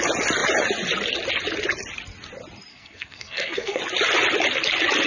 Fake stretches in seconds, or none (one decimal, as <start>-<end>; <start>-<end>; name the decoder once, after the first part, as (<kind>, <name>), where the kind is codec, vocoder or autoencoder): 2.7-3.8 (codec, SNAC)